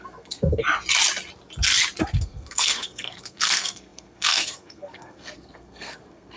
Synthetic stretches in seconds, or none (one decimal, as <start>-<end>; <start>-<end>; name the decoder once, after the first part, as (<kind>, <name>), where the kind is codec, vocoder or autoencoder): 0.0-0.6 (codec, SNAC); 2.0-6.4